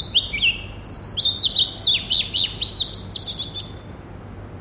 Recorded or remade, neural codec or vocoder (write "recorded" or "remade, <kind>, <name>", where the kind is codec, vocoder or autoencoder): recorded